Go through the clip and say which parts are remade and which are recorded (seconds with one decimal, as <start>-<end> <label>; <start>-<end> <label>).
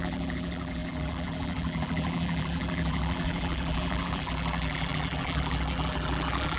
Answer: 0.0-6.6 remade